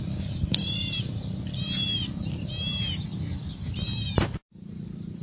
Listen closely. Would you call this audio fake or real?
real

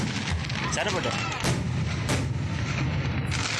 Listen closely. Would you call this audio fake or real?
real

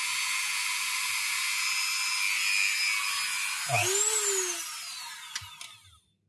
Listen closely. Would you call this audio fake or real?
real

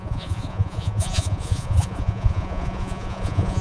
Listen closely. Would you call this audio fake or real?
fake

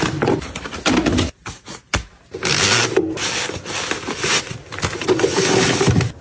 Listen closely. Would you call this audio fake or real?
real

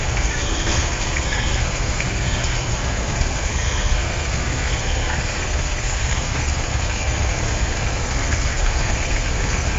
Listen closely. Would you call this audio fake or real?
fake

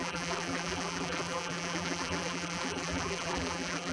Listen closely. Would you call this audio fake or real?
fake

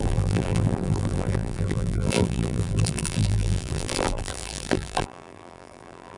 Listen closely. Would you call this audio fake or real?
fake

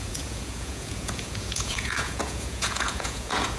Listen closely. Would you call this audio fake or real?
fake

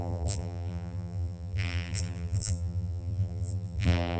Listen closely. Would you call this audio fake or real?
fake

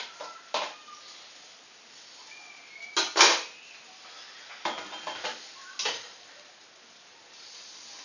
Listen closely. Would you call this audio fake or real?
real